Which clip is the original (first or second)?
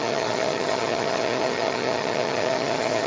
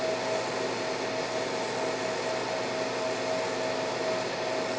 second